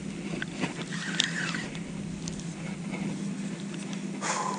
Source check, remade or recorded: recorded